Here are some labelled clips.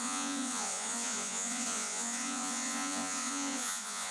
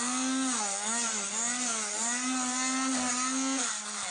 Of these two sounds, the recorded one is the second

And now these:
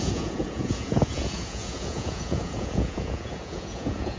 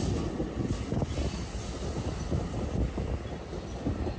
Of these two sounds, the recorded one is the second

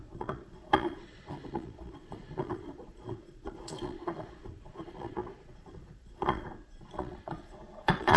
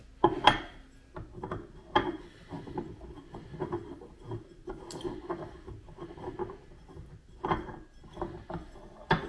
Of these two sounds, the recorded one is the second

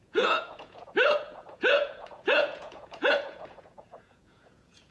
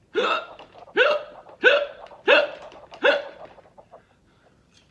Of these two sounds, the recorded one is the second